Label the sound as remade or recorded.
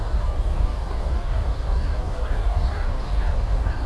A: remade